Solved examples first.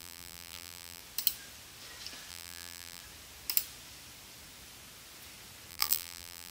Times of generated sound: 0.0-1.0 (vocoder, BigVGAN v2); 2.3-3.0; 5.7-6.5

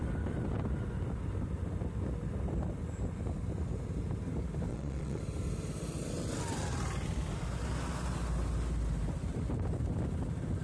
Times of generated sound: 4.7-5.2 (vocoder, Vocos)